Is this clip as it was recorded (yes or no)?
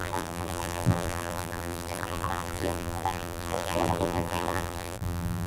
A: no